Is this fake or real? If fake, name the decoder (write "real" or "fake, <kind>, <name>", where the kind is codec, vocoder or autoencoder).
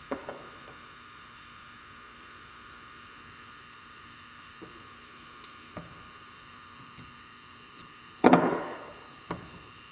fake, codec, HILCodec